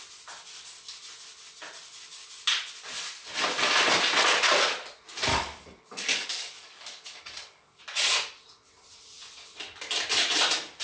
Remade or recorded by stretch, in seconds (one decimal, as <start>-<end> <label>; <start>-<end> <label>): 0.0-5.3 recorded; 5.3-7.8 remade; 7.8-10.8 recorded